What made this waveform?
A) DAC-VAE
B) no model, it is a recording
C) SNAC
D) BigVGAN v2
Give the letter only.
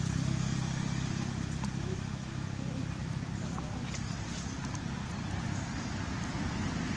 B